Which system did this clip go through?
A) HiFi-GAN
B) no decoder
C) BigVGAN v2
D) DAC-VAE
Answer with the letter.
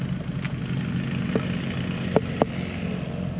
B